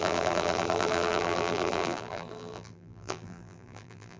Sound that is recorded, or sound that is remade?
remade